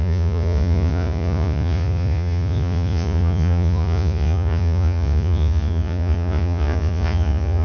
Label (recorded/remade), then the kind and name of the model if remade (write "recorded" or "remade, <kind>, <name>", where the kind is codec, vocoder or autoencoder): remade, vocoder, Vocos